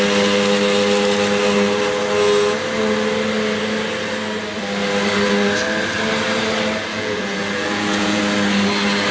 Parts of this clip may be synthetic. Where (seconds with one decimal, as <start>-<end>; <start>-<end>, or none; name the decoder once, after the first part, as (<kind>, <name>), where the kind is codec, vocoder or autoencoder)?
6.9-8.2 (vocoder, Vocos)